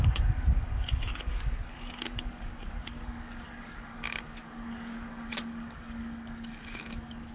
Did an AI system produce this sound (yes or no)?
yes